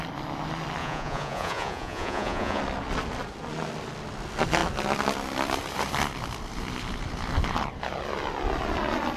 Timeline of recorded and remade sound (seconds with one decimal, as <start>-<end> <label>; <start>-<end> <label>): 0.0-0.8 recorded; 0.8-2.6 remade; 2.6-9.2 recorded

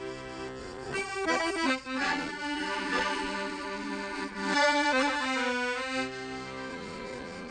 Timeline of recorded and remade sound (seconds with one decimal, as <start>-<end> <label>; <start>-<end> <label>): 0.0-0.6 recorded; 0.6-5.1 remade; 5.1-6.7 recorded; 6.7-7.5 remade

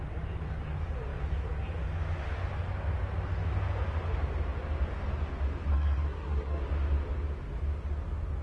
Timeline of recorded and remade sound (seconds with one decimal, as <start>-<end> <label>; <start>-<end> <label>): 0.0-5.7 recorded; 5.7-6.6 remade; 6.6-8.4 recorded

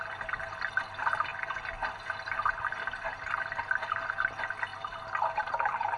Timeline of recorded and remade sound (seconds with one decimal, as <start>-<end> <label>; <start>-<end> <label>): 0.0-6.0 recorded

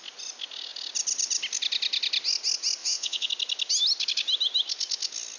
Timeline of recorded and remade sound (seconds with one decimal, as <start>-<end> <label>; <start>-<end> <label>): 0.0-2.8 recorded; 2.8-3.3 remade; 3.3-5.4 recorded